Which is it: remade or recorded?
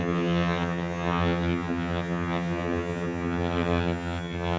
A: remade